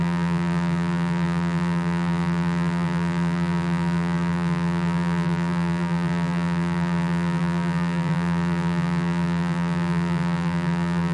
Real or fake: fake